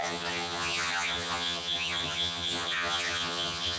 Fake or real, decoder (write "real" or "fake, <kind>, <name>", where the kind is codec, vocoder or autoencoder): fake, vocoder, HiFi-GAN